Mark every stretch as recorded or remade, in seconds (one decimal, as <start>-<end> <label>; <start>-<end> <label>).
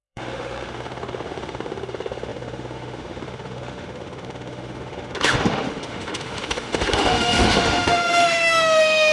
0.0-9.1 remade